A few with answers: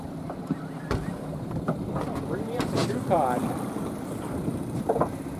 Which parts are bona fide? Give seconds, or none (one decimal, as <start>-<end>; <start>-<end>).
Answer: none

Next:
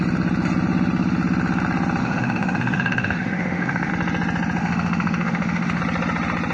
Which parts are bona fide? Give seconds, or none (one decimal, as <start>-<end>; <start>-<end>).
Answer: 0.0-2.0; 3.9-4.6; 5.8-6.5

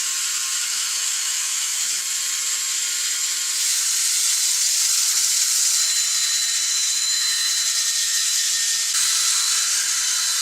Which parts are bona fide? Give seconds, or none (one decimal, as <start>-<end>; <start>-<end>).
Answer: 0.0-0.6; 2.0-6.7; 7.5-8.0; 8.5-10.4

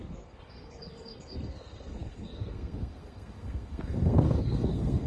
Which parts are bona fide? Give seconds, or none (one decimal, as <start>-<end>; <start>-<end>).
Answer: none

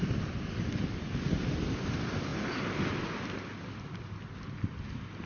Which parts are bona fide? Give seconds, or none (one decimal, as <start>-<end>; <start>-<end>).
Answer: 0.0-5.3